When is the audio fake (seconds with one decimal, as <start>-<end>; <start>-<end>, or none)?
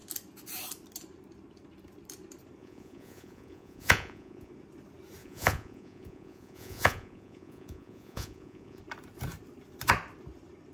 2.6-4.5; 5.2-8.8